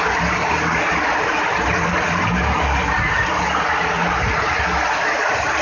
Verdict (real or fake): real